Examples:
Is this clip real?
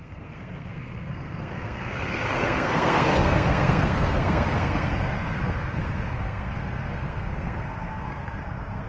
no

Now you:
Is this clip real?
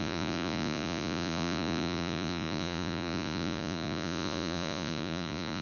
no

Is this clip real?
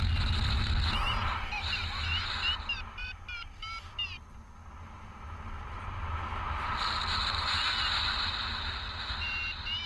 yes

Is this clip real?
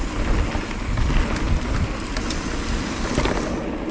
yes